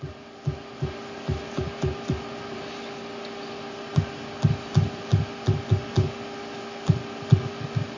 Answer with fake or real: real